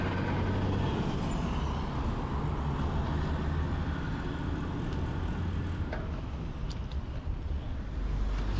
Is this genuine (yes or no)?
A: yes